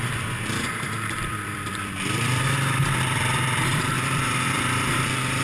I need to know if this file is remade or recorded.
remade